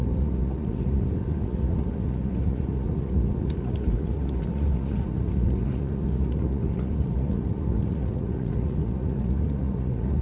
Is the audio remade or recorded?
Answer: remade